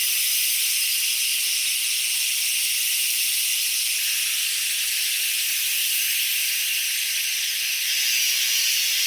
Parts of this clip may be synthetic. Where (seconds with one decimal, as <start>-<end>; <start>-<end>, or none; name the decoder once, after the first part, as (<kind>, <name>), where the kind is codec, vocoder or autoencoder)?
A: none